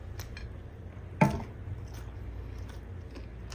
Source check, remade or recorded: recorded